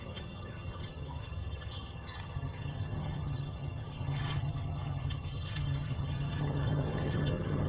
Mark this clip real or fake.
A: fake